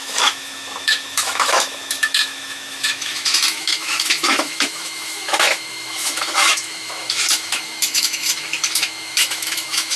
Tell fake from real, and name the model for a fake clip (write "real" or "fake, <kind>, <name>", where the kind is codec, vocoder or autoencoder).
fake, autoencoder, DAC-VAE